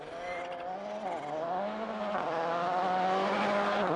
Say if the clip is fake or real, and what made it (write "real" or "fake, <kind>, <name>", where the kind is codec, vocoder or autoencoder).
real